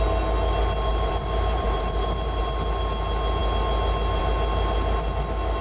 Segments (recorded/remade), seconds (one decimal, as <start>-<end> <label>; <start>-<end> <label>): 0.0-0.9 recorded; 0.9-2.4 remade; 2.4-5.6 recorded